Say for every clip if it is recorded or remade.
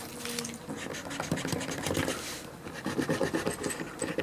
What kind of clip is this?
recorded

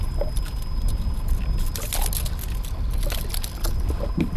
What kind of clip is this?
recorded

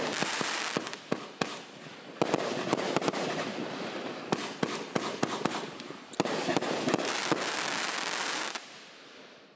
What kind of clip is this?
recorded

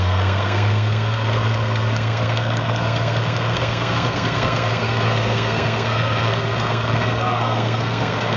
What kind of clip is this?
remade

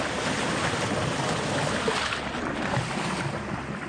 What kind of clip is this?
recorded